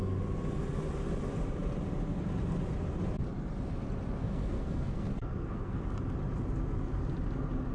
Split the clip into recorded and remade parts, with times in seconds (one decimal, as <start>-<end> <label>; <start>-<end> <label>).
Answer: 0.0-4.2 recorded; 4.2-5.9 remade; 5.9-7.7 recorded